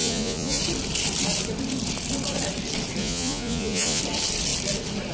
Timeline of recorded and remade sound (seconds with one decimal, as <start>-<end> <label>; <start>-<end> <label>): 0.0-0.6 remade; 0.6-3.0 recorded; 3.0-4.0 remade; 4.0-5.1 recorded